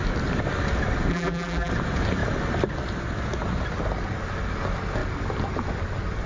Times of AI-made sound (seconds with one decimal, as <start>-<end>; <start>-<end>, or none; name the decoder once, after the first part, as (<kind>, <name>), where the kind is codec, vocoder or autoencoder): 1.1-1.7 (vocoder, BigVGAN v2)